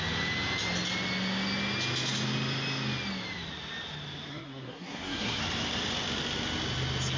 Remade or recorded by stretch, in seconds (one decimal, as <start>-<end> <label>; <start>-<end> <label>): 0.0-4.3 recorded; 4.3-5.4 remade; 5.4-7.2 recorded